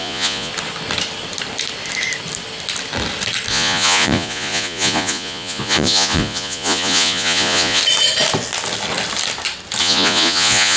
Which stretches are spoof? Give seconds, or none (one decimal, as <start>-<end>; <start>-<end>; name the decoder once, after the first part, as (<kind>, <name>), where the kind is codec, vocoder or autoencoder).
0.0-0.5 (vocoder, Vocos); 3.5-7.8; 9.8-10.8